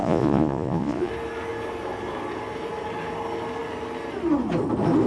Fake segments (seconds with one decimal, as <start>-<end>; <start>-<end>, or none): 0.0-1.1